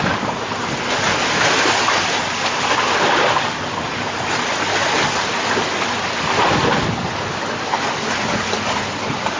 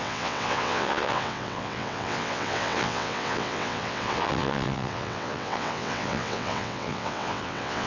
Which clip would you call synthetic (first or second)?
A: second